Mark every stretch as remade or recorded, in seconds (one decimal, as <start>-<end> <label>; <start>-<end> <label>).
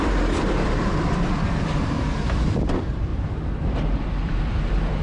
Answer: 0.0-3.1 remade; 3.1-4.0 recorded; 4.0-5.0 remade